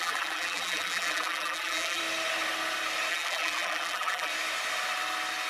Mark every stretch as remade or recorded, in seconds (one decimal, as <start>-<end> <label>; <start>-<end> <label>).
0.0-2.0 remade; 2.0-3.1 recorded; 3.1-4.3 remade; 4.3-5.5 recorded